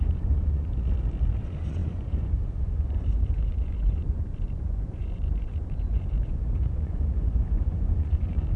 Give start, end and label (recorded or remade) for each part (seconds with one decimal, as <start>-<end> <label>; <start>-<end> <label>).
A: 0.0-0.7 remade; 0.7-1.3 recorded; 1.3-8.6 remade

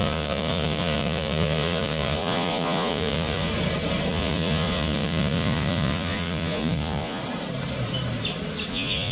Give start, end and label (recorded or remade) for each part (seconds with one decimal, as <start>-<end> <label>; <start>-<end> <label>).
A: 0.0-3.5 remade; 3.5-4.1 recorded; 4.1-7.2 remade; 7.2-8.7 recorded; 8.7-9.1 remade

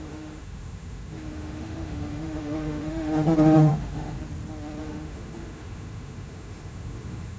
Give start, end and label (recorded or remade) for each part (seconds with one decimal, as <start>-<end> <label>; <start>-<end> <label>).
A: 0.0-4.2 remade; 4.2-4.8 recorded; 4.8-7.4 remade

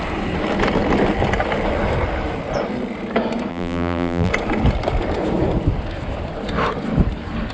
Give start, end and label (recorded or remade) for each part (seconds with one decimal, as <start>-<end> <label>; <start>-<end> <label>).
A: 0.0-3.5 recorded; 3.5-4.3 remade; 4.3-7.5 recorded